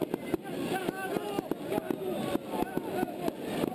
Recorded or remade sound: recorded